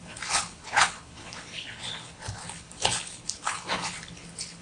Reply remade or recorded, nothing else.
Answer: remade